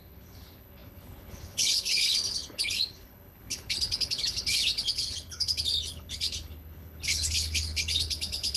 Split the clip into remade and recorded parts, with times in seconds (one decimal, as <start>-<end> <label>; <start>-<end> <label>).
0.0-8.6 remade